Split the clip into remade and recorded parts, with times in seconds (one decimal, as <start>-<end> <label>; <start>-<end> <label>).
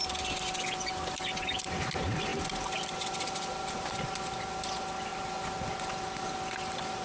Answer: 0.0-0.9 recorded; 0.9-5.1 remade; 5.1-5.8 recorded; 5.8-7.0 remade